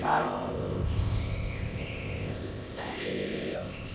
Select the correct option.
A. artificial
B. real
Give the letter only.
A